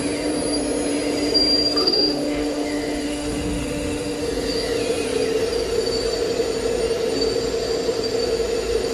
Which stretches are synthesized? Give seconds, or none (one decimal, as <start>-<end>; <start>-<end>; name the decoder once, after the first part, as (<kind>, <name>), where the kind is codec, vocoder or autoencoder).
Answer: 1.8-4.2 (autoencoder, DAC-VAE)